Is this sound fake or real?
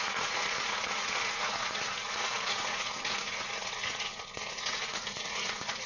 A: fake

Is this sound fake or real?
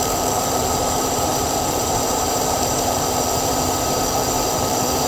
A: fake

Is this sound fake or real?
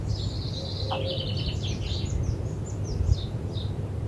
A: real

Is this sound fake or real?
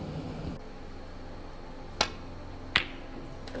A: real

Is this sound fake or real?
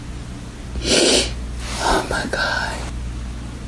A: real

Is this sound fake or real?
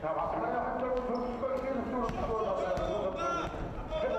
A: real